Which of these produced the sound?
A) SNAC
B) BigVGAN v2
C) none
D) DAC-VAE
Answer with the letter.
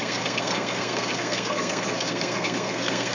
A